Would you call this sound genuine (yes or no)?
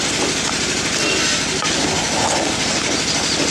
yes